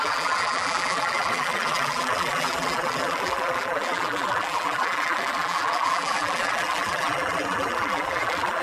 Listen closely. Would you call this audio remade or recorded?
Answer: remade